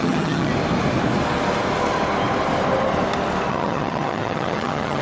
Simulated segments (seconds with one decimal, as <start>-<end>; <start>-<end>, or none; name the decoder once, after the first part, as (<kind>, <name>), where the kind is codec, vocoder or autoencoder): 0.0-0.5 (vocoder, HiFi-GAN); 3.5-5.0